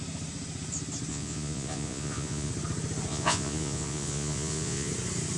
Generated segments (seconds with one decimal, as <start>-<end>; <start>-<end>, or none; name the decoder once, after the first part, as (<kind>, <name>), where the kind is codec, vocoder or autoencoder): 1.1-2.5 (vocoder, Vocos); 3.1-4.9